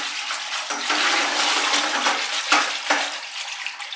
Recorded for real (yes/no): yes